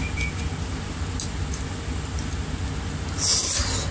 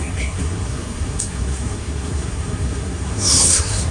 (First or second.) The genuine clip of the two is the first